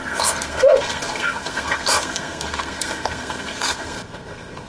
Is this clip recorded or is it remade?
remade